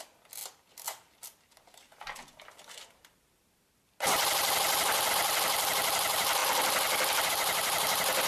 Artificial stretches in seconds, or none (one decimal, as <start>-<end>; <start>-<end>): none